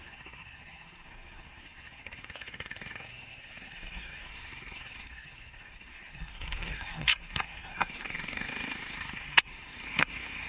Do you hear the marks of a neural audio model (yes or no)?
yes